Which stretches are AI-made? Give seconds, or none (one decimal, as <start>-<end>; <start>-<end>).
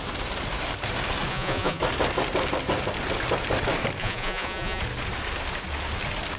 1.3-1.8; 4.0-4.8